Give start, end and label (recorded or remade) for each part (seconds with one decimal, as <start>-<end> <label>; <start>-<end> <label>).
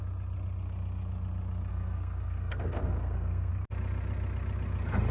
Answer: 0.0-1.7 recorded; 1.7-3.5 remade; 3.5-5.1 recorded